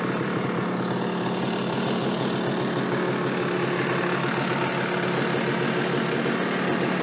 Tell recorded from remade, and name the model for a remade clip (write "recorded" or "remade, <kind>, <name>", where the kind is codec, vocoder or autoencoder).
recorded